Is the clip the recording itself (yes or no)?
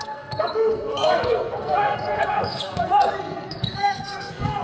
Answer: no